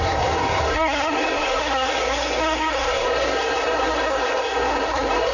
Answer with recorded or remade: remade